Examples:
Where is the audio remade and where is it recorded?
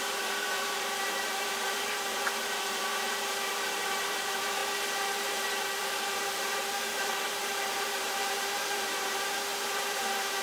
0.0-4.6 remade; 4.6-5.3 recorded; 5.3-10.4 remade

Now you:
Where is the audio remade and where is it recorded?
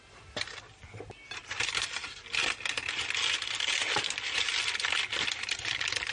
0.0-6.1 recorded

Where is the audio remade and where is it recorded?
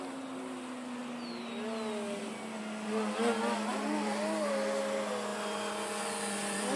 0.0-3.7 recorded; 3.7-4.5 remade; 4.5-5.3 recorded; 5.3-6.8 remade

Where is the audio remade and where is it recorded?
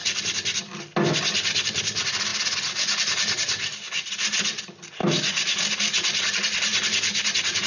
0.0-7.7 recorded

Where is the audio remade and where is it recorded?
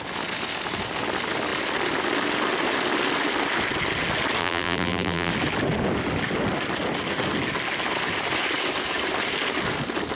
0.0-4.4 recorded; 4.4-5.3 remade; 5.3-10.1 recorded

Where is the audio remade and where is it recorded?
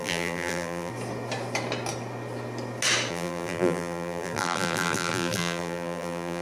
0.0-0.9 remade; 0.9-3.1 recorded; 3.1-6.4 remade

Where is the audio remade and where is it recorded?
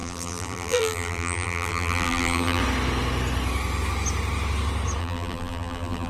0.0-2.6 remade; 2.6-5.0 recorded; 5.0-6.1 remade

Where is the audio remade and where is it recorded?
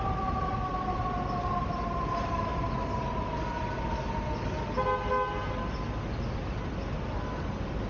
0.0-7.9 recorded